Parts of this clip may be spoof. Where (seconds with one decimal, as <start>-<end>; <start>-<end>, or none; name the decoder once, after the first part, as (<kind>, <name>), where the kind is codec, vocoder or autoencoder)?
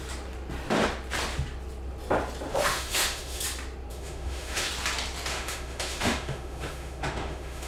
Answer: 2.5-3.4 (autoencoder, DAC-VAE); 3.9-4.7; 5.3-7.7